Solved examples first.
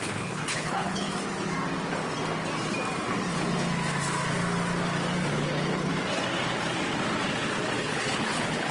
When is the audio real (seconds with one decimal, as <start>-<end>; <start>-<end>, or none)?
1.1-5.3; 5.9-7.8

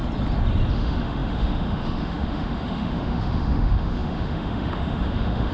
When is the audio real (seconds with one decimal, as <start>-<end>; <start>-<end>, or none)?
0.0-0.7

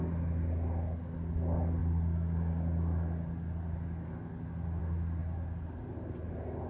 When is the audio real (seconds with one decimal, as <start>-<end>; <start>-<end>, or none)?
0.0-6.7